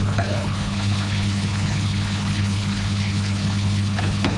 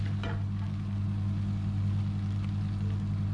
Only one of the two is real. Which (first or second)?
second